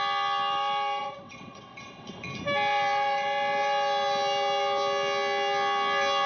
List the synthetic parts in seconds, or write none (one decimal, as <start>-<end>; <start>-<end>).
1.0-2.4